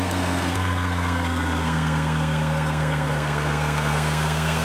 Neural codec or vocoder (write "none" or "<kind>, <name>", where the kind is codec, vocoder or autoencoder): codec, SNAC